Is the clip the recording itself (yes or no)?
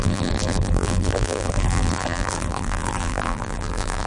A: no